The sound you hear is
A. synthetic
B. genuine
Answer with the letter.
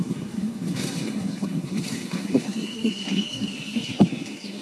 A